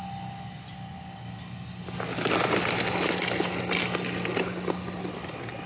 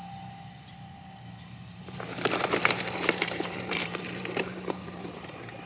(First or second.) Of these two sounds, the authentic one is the first